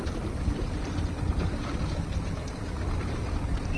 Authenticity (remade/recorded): recorded